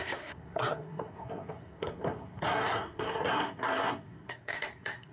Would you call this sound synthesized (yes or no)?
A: yes